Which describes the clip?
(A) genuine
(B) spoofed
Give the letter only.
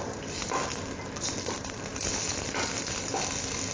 A